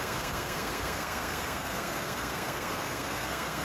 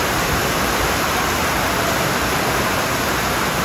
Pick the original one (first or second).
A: second